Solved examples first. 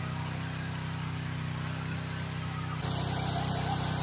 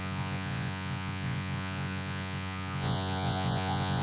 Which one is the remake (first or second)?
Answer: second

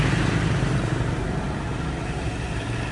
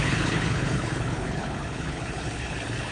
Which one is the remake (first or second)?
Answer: second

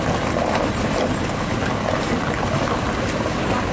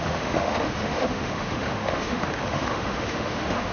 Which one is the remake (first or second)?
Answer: second